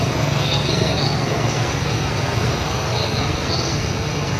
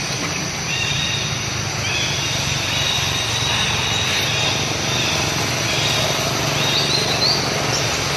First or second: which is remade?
first